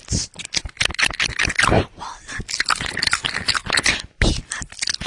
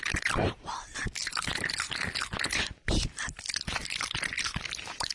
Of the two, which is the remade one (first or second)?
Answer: second